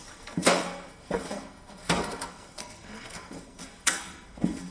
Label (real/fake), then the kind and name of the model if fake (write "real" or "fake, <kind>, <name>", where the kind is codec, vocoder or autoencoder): fake, codec, SNAC